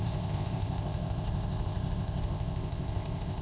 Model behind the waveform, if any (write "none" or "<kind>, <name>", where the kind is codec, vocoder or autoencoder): codec, ZipCodec